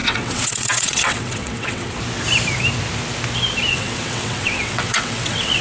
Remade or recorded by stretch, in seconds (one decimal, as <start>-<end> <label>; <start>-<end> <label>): 0.0-1.9 remade; 1.9-3.7 recorded; 3.7-5.6 remade